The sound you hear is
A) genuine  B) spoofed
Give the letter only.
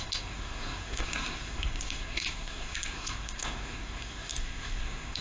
B